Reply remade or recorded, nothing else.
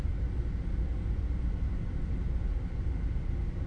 recorded